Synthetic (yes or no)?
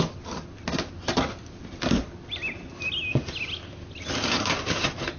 no